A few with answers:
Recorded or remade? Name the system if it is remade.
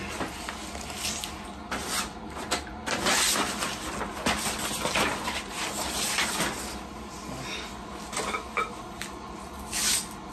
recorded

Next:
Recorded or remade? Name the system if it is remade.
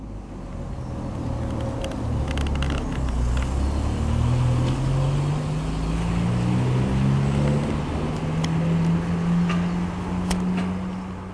recorded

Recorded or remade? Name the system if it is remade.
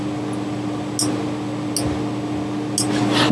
recorded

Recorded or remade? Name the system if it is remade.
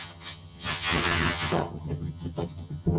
remade, vocoder, HiFi-GAN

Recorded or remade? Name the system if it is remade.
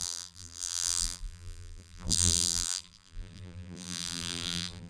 remade, vocoder, BigVGAN v2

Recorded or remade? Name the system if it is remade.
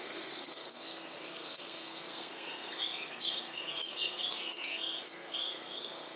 remade, codec, SNAC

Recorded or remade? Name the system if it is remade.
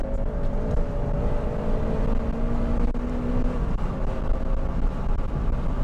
recorded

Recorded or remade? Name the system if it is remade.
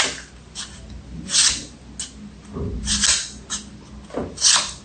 recorded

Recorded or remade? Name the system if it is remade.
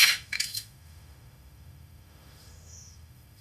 remade, autoencoder, DAC-VAE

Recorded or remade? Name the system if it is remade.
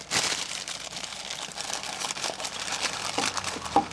recorded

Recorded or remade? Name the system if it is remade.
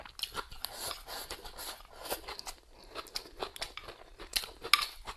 recorded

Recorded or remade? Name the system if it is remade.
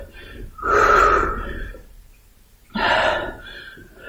remade, vocoder, BigVGAN v2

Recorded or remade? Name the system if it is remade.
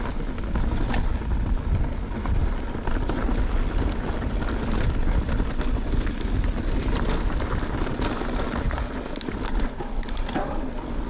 recorded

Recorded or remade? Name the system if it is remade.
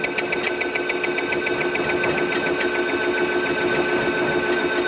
recorded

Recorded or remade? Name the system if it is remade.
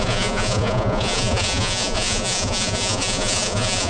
remade, vocoder, Vocos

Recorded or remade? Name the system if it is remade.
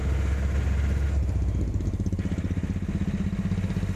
recorded